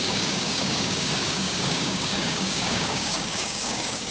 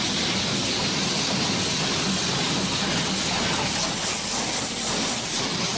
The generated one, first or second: first